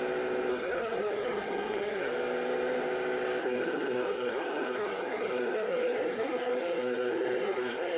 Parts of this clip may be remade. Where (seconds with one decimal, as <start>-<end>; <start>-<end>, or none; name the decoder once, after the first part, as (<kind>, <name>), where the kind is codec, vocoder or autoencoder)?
0.5-2.1 (codec, SNAC); 3.4-8.0